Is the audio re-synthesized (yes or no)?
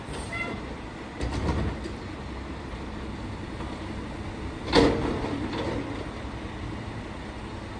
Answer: no